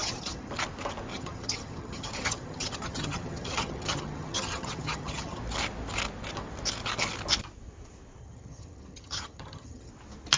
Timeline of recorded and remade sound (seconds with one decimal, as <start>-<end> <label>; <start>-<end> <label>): 0.0-0.5 remade; 0.5-1.1 recorded; 1.1-5.4 remade; 5.4-8.2 recorded; 8.2-9.9 remade; 9.9-10.4 recorded